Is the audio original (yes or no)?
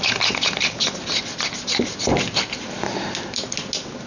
yes